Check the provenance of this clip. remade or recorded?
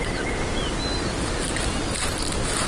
recorded